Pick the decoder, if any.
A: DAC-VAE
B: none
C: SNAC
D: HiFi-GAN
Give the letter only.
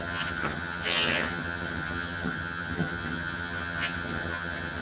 D